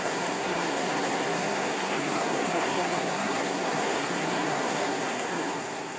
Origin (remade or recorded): remade